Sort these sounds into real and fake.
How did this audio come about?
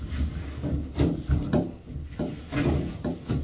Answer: real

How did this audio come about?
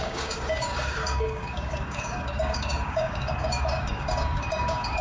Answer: fake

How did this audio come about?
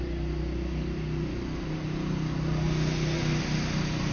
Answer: real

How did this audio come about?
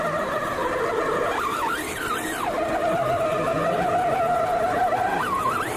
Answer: real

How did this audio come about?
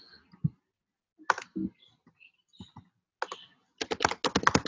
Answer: real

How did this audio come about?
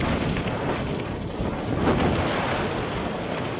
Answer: real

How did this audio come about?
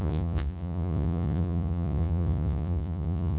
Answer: fake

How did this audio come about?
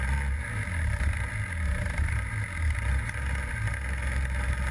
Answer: real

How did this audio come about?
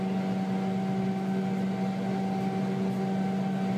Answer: real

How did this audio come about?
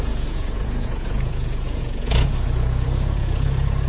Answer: fake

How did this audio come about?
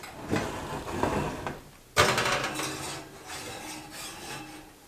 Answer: real